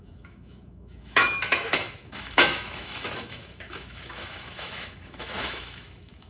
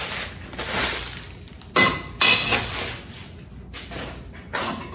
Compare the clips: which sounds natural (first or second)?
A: second